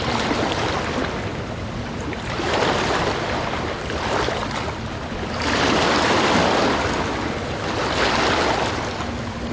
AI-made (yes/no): no